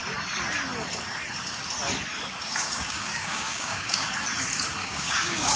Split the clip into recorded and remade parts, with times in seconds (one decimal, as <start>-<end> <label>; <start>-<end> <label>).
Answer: 0.0-2.4 recorded; 2.4-4.1 remade; 4.1-4.8 recorded; 4.8-5.6 remade